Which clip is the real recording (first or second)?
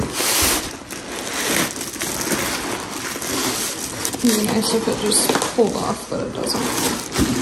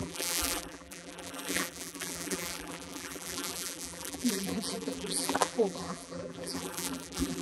first